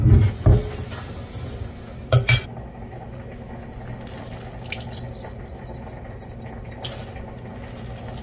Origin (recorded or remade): recorded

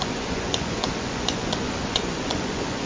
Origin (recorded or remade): remade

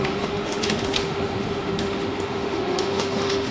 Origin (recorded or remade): remade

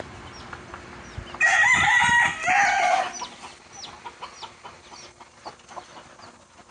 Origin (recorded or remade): recorded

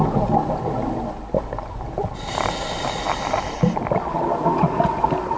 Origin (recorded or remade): recorded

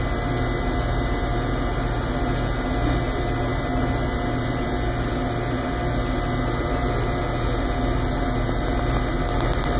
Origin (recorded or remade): recorded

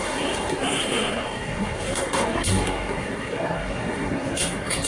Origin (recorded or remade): remade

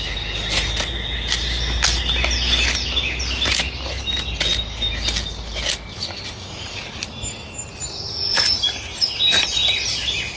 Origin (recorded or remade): recorded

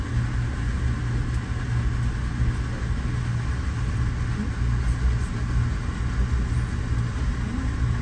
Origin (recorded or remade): recorded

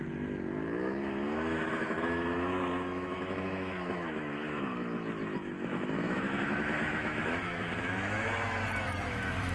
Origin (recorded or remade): remade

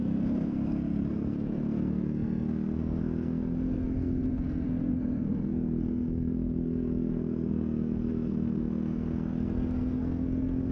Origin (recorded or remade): remade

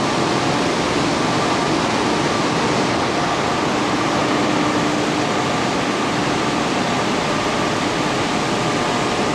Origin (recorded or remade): recorded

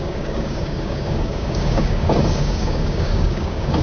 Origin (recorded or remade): remade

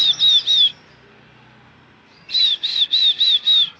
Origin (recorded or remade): recorded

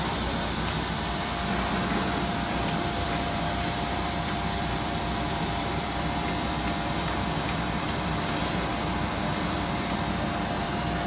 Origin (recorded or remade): remade